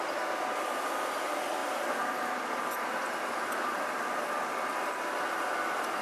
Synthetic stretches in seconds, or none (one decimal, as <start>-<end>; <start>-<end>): none